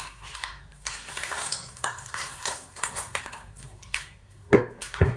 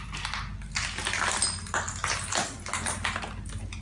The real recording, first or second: second